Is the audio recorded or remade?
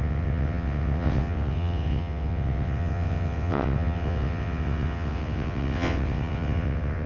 remade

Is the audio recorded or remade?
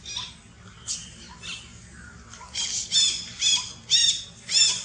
recorded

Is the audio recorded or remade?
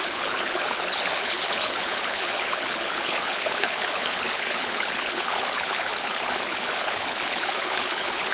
remade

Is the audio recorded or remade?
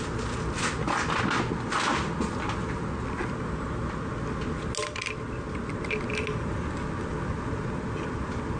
recorded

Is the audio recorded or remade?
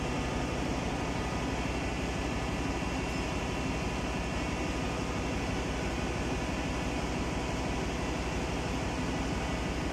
recorded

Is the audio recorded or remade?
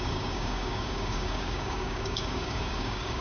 remade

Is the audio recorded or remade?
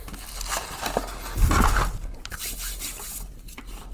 recorded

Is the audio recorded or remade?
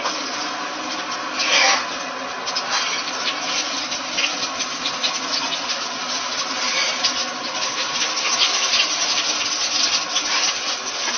recorded